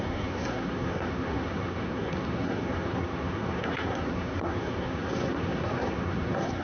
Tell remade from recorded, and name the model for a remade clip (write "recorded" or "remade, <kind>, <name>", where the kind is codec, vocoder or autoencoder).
remade, codec, SNAC